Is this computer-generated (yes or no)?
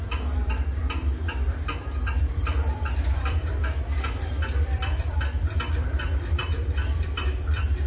yes